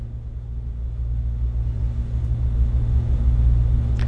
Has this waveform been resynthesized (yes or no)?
no